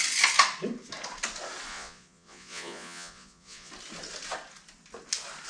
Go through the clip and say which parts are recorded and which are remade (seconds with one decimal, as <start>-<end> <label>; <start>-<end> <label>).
0.0-1.7 recorded; 1.7-3.7 remade; 3.7-5.5 recorded